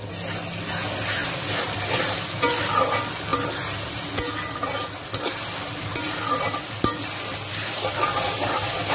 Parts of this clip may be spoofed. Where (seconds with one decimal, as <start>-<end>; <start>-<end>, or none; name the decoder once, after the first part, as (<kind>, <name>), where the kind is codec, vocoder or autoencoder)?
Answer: none